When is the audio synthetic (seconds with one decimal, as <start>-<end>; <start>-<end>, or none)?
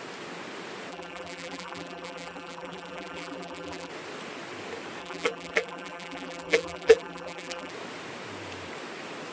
0.9-3.9; 5.0-7.7